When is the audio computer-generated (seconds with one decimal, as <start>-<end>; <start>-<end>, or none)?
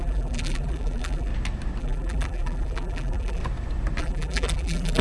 0.0-1.3; 1.8-3.4; 4.0-5.0